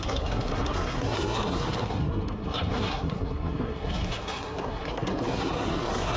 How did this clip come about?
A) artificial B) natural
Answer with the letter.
A